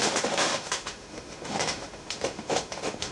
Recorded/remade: remade